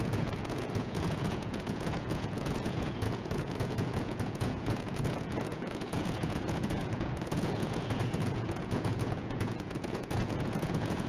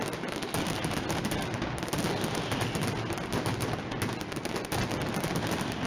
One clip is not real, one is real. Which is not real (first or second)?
first